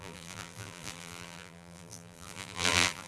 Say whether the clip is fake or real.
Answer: fake